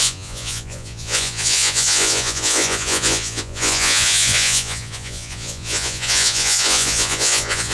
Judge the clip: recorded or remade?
remade